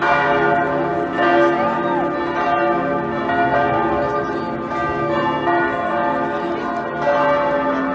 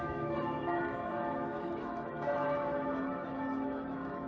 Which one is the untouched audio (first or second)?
first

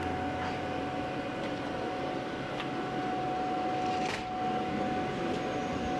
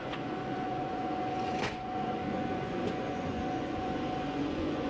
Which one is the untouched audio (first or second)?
first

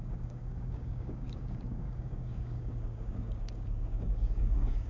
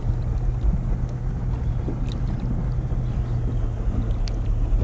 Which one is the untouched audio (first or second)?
second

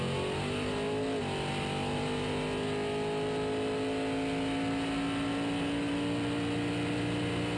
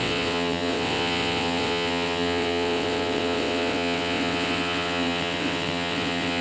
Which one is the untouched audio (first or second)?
first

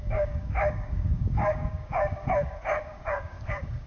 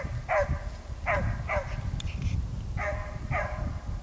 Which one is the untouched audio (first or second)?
second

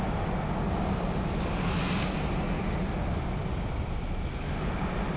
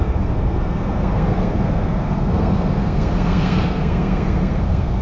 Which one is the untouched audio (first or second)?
first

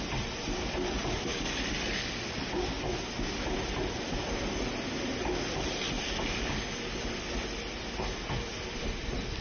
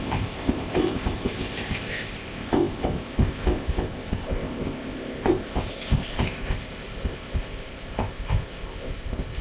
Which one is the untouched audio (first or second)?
first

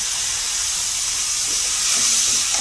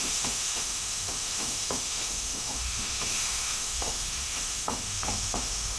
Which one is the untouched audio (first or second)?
first